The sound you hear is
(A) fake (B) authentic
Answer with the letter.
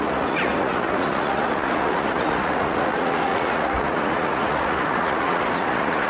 A